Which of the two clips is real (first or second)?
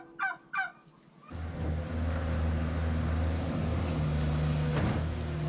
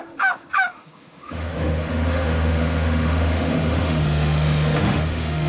first